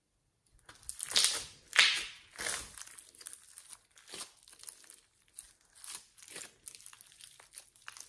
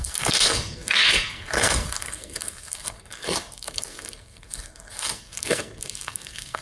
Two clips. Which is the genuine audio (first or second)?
first